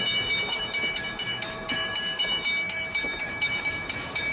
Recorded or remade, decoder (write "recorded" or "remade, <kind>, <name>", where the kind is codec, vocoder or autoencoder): remade, autoencoder, DAC-VAE